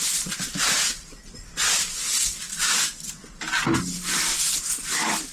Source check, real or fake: real